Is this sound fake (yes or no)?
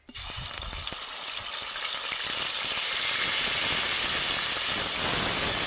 no